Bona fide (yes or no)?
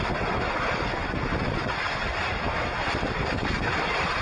yes